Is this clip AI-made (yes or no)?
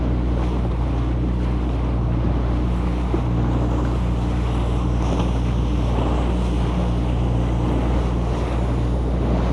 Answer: no